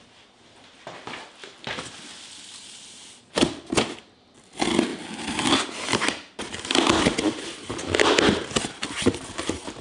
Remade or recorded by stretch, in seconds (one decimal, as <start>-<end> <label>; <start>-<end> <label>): 0.0-9.8 recorded